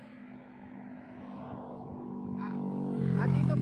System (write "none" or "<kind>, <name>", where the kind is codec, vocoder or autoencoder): autoencoder, DAC-VAE